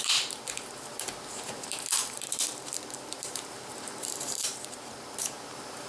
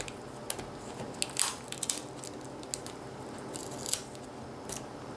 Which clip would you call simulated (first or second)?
first